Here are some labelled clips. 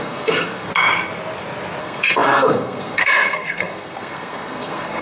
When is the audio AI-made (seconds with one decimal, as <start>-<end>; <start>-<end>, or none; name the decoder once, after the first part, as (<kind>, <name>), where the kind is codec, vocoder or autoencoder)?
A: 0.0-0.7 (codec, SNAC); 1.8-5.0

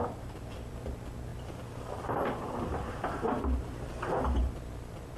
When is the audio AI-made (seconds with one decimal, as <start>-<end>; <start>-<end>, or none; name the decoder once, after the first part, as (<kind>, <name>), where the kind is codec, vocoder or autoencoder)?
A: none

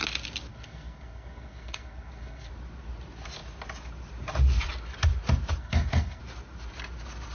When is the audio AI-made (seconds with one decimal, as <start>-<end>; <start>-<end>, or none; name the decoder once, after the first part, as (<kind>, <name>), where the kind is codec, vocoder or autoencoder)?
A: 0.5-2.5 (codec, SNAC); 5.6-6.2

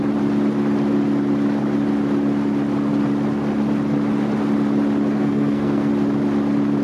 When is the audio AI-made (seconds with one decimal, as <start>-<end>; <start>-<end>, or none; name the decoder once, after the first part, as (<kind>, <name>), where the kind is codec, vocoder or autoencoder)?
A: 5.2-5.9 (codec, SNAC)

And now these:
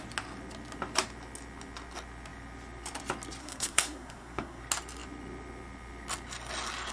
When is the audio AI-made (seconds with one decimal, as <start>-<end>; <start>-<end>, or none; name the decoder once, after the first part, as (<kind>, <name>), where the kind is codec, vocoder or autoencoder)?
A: 3.4-4.6 (codec, SNAC)

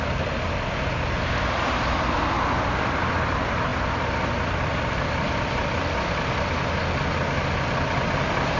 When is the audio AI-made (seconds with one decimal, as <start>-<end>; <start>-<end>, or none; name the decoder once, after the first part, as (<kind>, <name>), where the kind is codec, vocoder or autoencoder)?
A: none

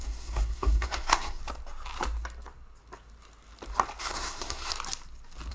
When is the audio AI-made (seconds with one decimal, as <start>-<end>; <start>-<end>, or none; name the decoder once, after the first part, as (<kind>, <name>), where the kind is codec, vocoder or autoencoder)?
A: 0.0-1.4 (codec, SNAC); 4.0-4.7